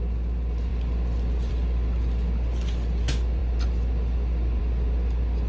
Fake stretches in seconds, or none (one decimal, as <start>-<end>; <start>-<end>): none